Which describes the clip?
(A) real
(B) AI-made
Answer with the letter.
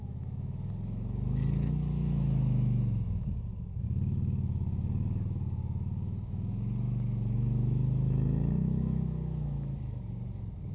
B